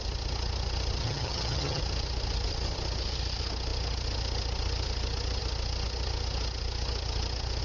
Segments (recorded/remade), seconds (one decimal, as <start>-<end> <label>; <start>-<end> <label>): 0.0-1.0 recorded; 1.0-1.8 remade; 1.8-7.6 recorded